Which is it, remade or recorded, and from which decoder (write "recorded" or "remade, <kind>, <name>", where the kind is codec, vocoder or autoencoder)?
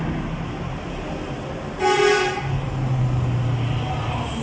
recorded